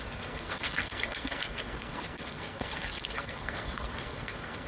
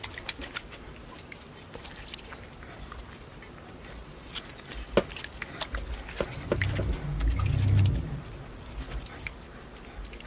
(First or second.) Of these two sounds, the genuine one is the second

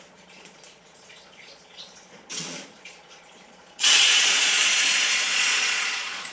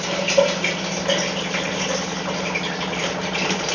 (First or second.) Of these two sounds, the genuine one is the second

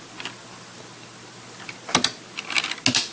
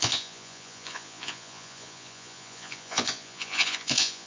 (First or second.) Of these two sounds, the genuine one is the first